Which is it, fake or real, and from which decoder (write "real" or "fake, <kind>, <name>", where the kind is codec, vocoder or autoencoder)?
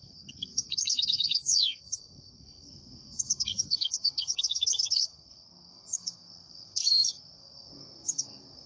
fake, codec, SNAC